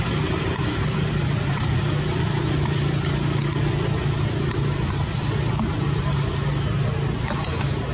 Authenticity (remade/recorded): recorded